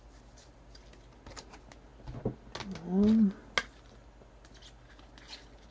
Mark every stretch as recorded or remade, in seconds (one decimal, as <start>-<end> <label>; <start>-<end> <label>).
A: 0.0-5.7 recorded